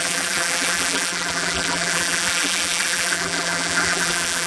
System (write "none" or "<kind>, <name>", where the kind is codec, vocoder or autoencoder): vocoder, BigVGAN v2